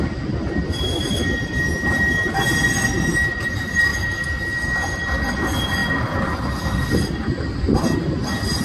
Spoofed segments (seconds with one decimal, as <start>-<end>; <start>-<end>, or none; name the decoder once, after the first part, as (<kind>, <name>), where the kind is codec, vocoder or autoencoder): none